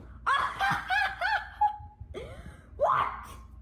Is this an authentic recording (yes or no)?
yes